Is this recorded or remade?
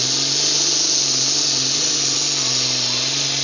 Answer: recorded